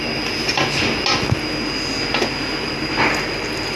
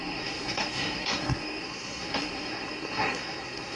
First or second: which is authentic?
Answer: first